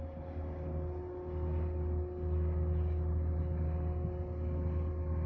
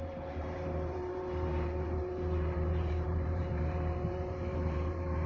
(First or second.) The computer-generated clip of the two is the second